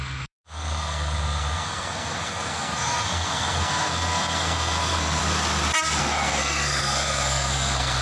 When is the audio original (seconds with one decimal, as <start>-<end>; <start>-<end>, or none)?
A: 5.2-6.0